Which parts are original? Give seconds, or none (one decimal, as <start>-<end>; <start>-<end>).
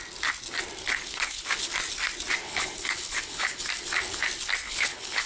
0.0-0.8; 1.6-2.4; 3.7-4.6